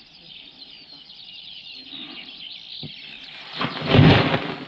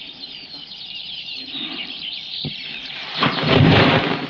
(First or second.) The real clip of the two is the first